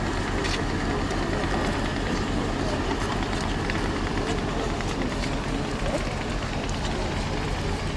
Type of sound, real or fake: real